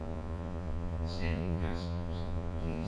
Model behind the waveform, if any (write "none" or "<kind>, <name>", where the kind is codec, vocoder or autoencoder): vocoder, Vocos